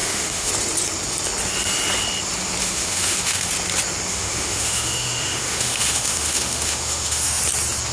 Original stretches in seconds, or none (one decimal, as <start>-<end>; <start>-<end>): 0.5-2.6; 3.5-4.1; 7.4-7.9